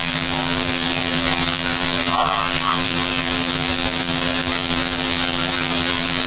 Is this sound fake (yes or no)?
yes